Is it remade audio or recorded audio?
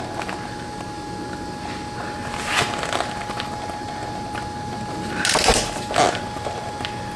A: recorded